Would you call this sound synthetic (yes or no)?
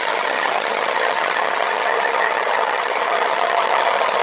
yes